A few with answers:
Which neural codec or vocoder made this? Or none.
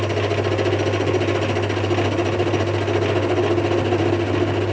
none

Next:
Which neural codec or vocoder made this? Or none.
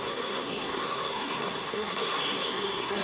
codec, SNAC